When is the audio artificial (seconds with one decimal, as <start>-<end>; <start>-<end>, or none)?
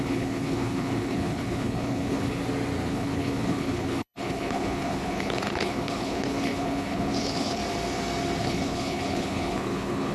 0.0-2.4; 2.9-7.6; 8.4-10.1